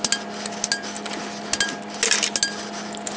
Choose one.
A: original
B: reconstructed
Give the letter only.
A